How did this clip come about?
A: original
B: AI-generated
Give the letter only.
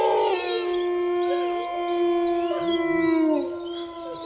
A